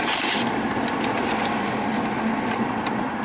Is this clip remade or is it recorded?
recorded